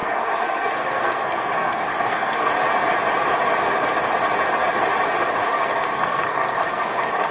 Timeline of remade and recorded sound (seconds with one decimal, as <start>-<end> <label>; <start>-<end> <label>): 0.0-2.5 remade; 2.5-5.4 recorded; 5.4-7.3 remade